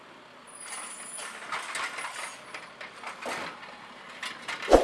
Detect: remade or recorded recorded